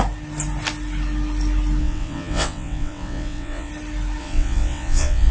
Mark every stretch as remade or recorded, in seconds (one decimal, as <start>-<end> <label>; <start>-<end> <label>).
0.0-1.8 recorded; 1.8-3.7 remade; 3.7-4.2 recorded; 4.2-5.3 remade